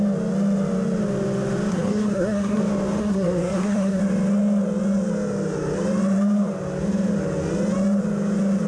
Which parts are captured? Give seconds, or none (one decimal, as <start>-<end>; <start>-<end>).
0.0-1.7; 2.6-3.0; 4.0-8.7